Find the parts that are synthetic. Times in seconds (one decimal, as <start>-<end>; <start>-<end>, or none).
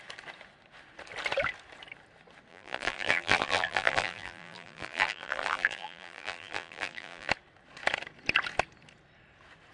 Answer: 2.5-7.3